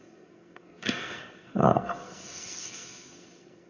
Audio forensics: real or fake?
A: fake